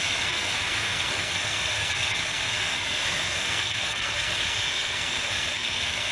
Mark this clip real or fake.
fake